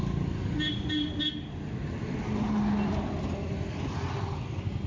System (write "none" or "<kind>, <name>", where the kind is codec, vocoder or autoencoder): none